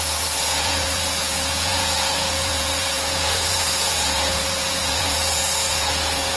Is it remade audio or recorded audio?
remade